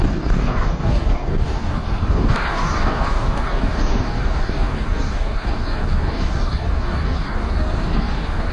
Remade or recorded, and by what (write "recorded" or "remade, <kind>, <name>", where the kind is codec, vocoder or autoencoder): remade, codec, DAC